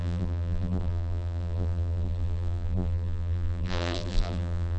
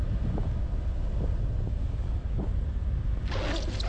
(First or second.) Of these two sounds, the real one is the second